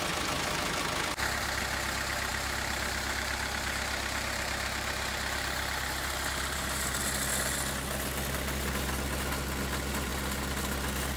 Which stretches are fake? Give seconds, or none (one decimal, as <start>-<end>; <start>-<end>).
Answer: 2.3-7.0